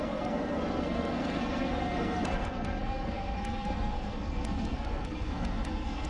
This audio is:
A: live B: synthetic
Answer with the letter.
B